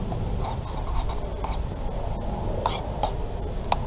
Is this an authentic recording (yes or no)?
yes